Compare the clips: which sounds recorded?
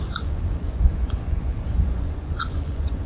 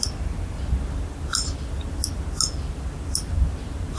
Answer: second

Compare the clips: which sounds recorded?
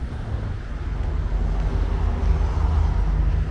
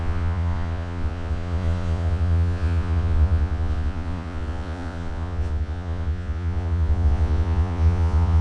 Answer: first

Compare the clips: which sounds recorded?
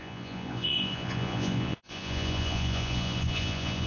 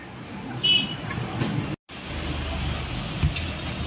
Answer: second